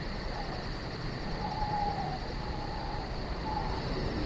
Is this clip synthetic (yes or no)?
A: no